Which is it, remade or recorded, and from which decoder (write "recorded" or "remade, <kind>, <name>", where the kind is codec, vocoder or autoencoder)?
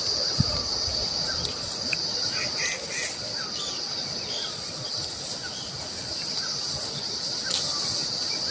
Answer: recorded